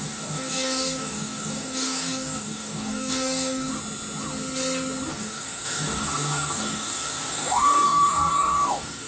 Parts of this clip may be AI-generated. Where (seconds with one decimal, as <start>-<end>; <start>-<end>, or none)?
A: 0.0-3.7; 5.1-9.1